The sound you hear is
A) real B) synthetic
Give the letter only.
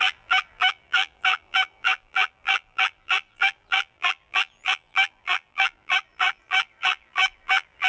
B